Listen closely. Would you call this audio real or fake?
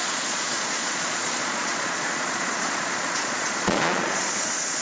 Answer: fake